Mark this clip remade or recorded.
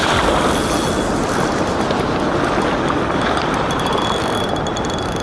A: recorded